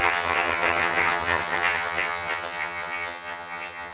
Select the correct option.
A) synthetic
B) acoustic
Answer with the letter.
A